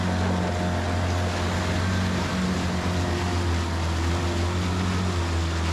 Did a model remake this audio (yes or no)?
no